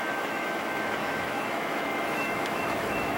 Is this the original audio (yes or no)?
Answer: no